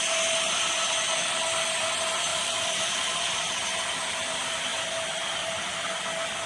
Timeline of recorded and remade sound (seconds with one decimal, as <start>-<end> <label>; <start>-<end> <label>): 0.0-2.3 recorded; 2.3-3.3 remade; 3.3-4.7 recorded; 4.7-5.6 remade; 5.6-6.5 recorded